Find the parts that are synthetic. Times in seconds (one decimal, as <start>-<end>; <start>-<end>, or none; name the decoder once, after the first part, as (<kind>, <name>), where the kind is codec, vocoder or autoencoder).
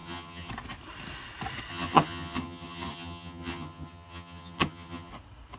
0.0-0.5 (vocoder, HiFi-GAN); 1.7-5.1